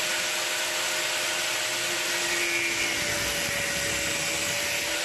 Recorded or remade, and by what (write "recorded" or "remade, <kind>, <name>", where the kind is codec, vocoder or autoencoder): recorded